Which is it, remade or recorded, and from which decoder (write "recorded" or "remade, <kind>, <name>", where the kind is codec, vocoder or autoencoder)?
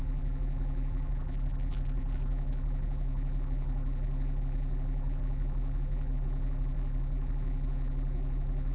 remade, vocoder, BigVGAN v2